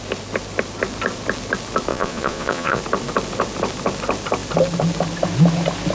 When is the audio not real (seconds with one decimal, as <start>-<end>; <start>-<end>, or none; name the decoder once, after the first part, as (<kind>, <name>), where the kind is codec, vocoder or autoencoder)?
1.9-2.8 (vocoder, Vocos)